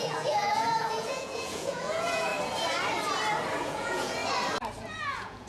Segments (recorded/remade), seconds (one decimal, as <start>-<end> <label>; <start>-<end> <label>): 0.0-2.3 remade; 2.3-3.6 recorded; 3.6-4.2 remade; 4.2-4.8 recorded; 4.8-5.5 remade

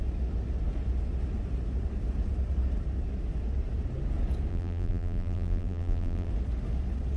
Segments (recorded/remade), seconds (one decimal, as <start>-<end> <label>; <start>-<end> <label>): 0.0-4.5 recorded; 4.5-6.3 remade; 6.3-7.2 recorded

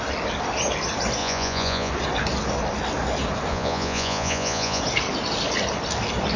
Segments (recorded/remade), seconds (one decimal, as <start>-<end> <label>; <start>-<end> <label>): 0.0-1.2 recorded; 1.2-1.9 remade; 1.9-3.5 recorded; 3.5-4.8 remade; 4.8-6.4 recorded